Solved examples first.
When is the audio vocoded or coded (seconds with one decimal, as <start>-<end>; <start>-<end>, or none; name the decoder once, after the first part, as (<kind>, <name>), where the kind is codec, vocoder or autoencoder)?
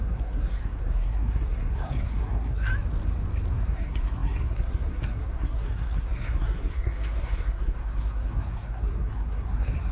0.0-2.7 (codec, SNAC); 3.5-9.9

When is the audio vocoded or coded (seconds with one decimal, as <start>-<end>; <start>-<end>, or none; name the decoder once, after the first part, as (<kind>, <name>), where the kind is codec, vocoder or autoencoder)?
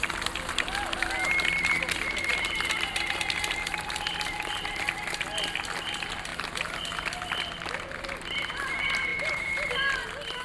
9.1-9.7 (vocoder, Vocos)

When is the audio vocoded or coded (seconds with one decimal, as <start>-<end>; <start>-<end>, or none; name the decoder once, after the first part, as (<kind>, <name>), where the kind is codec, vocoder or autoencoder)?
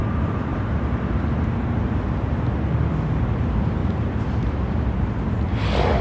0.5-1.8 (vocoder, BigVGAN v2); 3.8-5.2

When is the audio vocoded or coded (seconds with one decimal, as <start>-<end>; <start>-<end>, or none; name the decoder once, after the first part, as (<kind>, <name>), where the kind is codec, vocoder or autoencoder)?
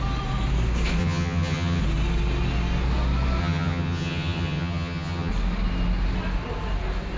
1.0-1.8 (vocoder, HiFi-GAN); 3.4-5.3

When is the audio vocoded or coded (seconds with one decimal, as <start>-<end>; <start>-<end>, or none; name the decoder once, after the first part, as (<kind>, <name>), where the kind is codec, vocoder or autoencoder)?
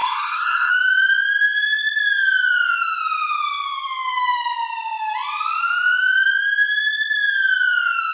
0.0-0.7 (codec, SNAC)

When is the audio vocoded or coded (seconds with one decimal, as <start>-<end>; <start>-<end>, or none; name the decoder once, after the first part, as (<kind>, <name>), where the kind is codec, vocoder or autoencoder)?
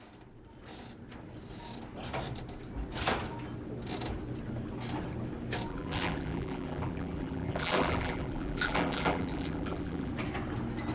5.7-10.1 (vocoder, BigVGAN v2)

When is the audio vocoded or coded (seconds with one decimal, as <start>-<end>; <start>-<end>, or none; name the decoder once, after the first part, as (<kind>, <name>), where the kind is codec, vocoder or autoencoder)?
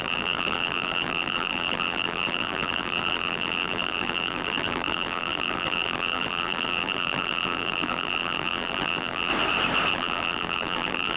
0.0-9.3 (vocoder, BigVGAN v2); 9.9-11.2